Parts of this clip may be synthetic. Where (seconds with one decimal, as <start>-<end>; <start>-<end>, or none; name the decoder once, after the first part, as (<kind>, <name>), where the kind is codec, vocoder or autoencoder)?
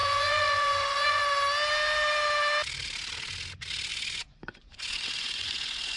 0.0-1.2 (vocoder, Vocos); 3.9-6.0